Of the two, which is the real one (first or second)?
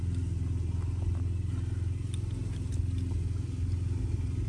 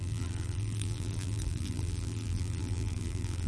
first